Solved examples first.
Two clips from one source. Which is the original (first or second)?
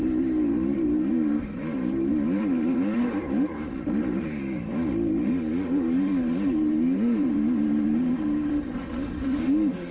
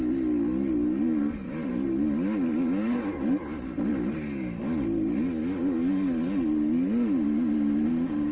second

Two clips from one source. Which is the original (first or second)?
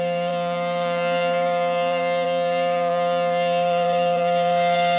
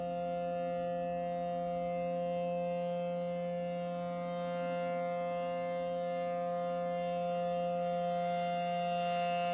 second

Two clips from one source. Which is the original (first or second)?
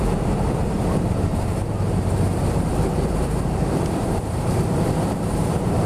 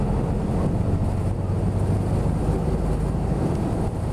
second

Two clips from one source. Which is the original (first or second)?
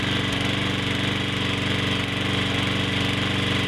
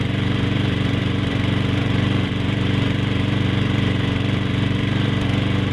first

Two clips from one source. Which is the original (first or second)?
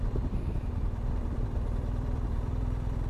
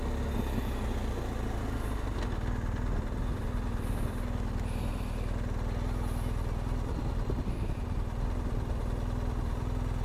second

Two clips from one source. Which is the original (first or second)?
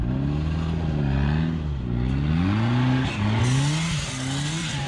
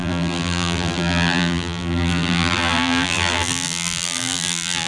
first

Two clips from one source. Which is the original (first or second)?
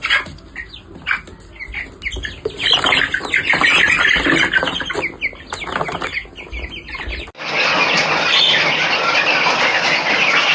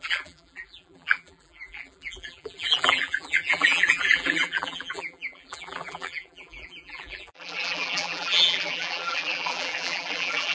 first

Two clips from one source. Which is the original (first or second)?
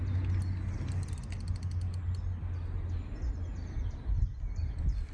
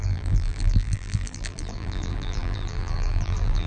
first